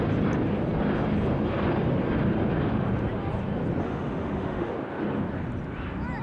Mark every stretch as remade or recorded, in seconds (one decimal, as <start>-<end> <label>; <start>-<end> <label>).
0.0-3.8 recorded; 3.8-4.7 remade; 4.7-6.2 recorded